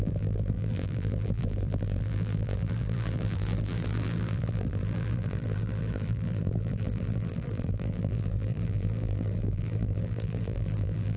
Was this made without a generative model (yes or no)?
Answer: no